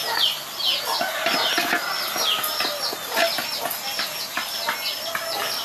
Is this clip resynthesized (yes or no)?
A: no